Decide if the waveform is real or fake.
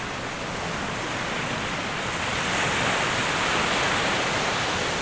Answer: real